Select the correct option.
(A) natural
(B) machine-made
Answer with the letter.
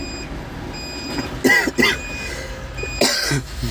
A